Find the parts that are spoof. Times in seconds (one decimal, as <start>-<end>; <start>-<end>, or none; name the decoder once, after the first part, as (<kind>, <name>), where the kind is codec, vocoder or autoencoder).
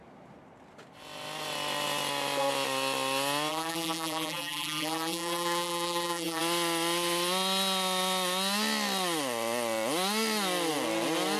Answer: 3.5-6.4 (vocoder, BigVGAN v2)